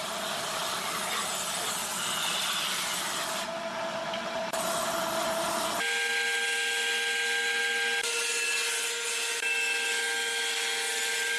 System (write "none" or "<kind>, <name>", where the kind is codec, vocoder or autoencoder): none